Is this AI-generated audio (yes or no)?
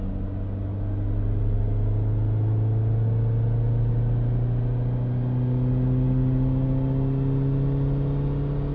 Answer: no